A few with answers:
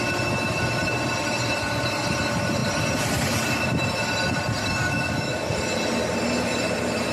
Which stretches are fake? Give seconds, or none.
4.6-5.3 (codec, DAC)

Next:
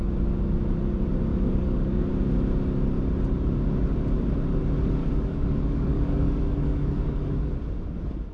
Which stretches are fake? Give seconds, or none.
1.3-2.1 (codec, DAC); 5.0-7.5

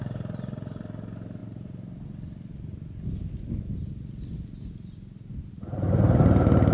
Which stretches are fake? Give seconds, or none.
none

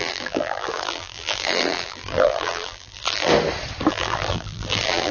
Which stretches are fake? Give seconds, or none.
0.0-3.3 (vocoder, BigVGAN v2); 3.9-5.1

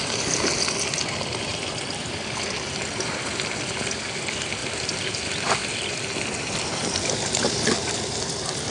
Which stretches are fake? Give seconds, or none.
1.5-2.8 (vocoder, BigVGAN v2); 4.6-5.1; 5.6-7.0

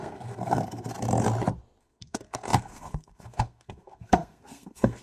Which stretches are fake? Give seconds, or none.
0.0-0.9 (codec, SNAC); 1.8-5.0